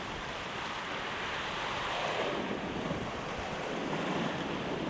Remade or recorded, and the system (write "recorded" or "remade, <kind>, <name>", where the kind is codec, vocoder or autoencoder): remade, vocoder, BigVGAN v2